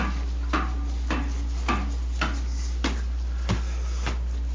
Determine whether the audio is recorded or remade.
recorded